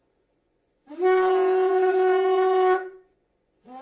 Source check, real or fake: fake